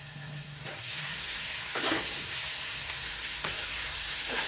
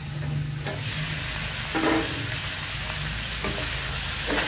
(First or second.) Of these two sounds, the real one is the second